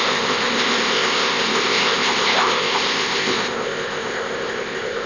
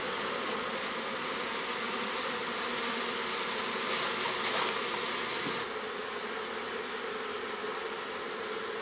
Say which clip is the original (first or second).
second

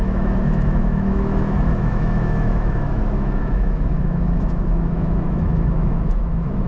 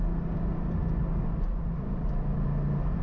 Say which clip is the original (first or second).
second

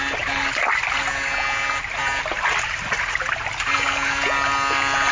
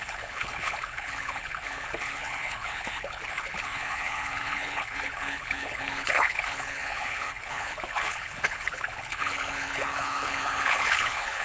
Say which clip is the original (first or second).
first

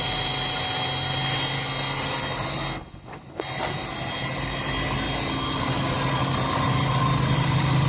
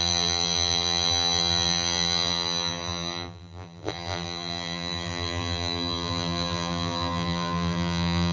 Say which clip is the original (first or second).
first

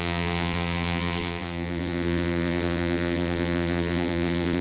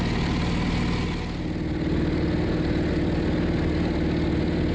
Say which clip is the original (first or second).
second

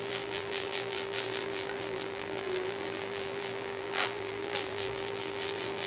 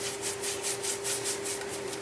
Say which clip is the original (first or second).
second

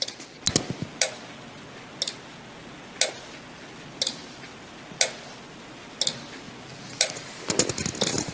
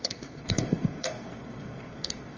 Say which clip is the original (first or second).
first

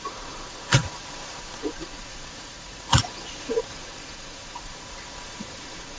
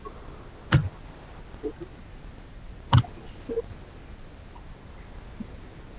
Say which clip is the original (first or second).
second